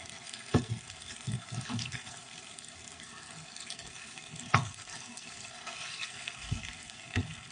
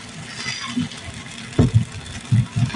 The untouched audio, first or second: second